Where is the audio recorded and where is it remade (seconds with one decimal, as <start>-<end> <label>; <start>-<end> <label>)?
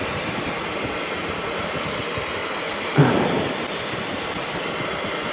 0.0-5.3 recorded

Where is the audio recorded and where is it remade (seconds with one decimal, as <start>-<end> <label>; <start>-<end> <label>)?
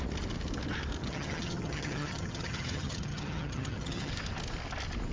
0.0-1.0 recorded; 1.0-4.1 remade; 4.1-5.1 recorded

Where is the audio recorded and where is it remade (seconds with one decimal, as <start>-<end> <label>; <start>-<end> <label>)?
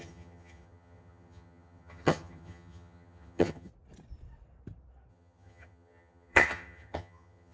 0.0-3.7 remade; 3.7-5.1 recorded; 5.1-7.5 remade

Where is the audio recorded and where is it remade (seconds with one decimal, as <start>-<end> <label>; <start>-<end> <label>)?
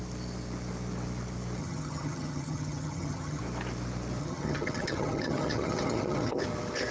0.0-1.6 recorded; 1.6-3.4 remade; 3.4-4.2 recorded; 4.2-6.4 remade; 6.4-6.9 recorded